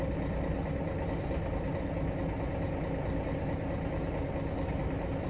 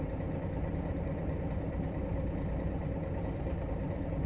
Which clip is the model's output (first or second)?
second